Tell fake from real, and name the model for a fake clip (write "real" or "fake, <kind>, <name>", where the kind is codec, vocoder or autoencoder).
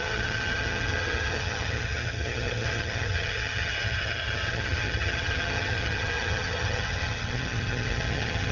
fake, vocoder, HiFi-GAN